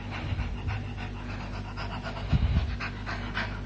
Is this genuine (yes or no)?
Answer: yes